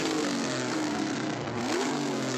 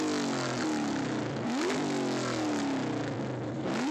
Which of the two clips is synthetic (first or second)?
first